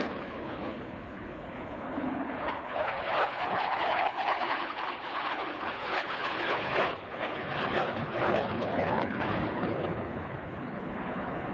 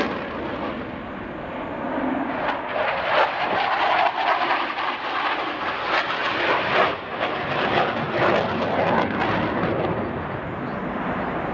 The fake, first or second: first